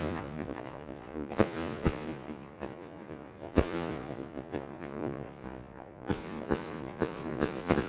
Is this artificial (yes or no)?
yes